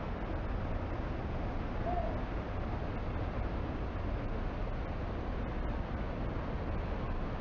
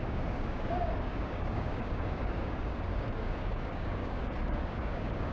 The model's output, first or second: second